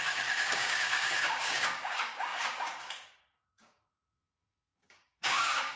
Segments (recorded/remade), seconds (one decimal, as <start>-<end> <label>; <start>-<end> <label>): 0.0-5.8 remade